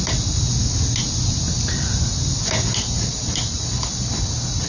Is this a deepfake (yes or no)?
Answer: no